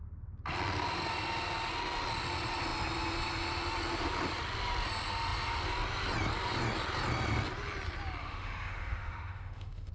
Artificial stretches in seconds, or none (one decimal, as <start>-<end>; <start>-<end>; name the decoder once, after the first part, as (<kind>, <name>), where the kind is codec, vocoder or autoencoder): 8.2-9.9 (autoencoder, DAC-VAE)